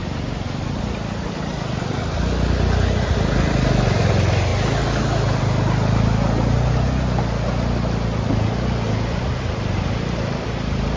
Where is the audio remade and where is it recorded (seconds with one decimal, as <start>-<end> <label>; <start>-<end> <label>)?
0.0-11.0 recorded